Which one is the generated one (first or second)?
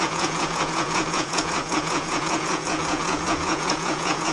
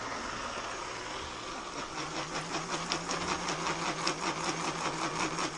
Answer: first